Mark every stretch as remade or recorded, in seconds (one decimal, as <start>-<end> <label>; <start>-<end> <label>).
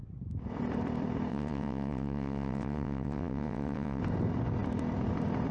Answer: 0.0-1.3 recorded; 1.3-4.0 remade; 4.0-5.5 recorded